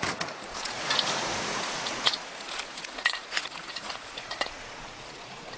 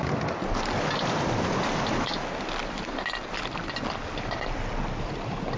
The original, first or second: second